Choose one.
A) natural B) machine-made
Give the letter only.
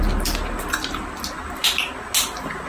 A